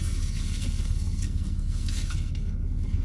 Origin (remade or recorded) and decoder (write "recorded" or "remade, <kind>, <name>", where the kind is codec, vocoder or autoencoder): remade, codec, SNAC